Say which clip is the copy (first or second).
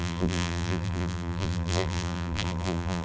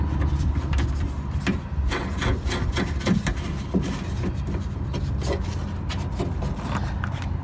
first